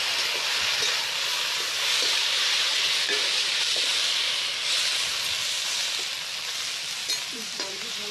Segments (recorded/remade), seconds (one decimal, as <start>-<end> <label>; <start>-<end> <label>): 0.0-1.3 recorded; 1.3-3.5 remade; 3.5-7.0 recorded; 7.0-8.1 remade